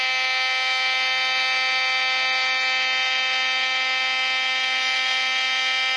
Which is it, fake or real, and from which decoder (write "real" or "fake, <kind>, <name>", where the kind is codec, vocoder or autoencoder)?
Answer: real